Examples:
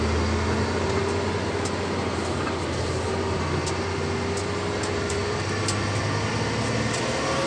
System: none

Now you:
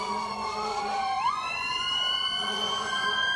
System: vocoder, Vocos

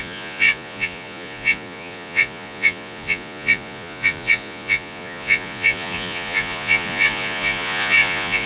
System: vocoder, Vocos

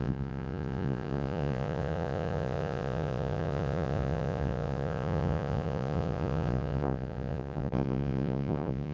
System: vocoder, Vocos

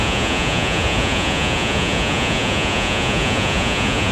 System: vocoder, Vocos